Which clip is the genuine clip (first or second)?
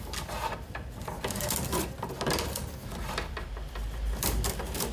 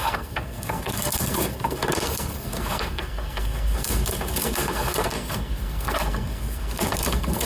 first